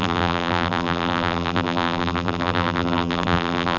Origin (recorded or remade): remade